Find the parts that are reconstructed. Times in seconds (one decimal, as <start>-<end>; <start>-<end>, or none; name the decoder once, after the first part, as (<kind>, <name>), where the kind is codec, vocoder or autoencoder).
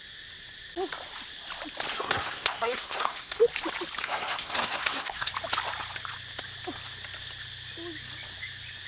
1.9-3.4 (codec, SNAC); 4.0-5.3